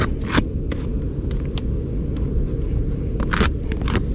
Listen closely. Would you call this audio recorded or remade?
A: recorded